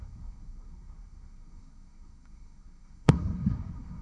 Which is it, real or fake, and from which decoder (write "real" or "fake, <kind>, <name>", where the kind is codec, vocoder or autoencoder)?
fake, codec, SNAC